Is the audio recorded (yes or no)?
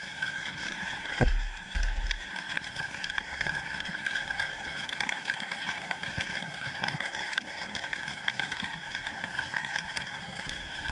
no